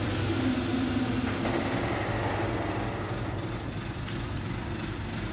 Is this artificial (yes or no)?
no